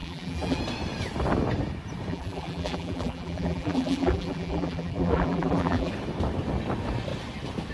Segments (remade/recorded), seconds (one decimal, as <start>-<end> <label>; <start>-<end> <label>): 0.0-0.6 remade; 0.6-2.1 recorded; 2.1-5.9 remade; 5.9-7.7 recorded